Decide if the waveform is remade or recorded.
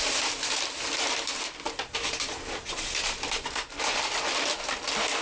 recorded